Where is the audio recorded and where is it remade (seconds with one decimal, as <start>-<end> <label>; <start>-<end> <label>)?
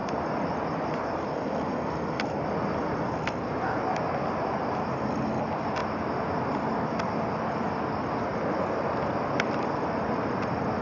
0.0-10.8 recorded